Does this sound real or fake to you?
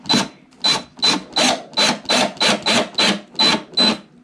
real